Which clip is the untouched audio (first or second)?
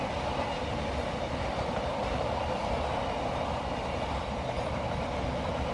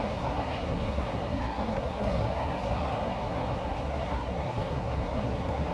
first